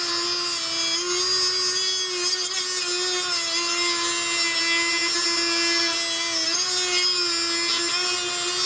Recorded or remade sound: recorded